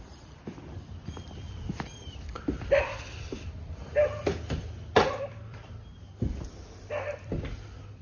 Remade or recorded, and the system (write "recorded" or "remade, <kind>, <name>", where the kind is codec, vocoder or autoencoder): remade, vocoder, BigVGAN v2